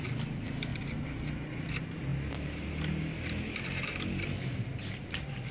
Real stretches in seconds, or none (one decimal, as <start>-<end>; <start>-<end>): 0.0-5.5

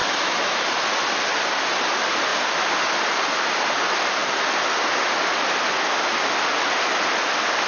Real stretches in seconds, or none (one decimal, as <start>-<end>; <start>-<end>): 0.6-7.7

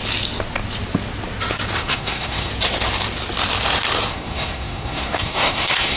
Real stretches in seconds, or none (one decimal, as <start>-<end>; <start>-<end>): 0.0-1.8; 2.5-4.1

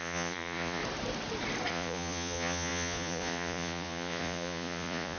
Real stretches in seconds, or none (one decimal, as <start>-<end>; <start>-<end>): 0.8-1.7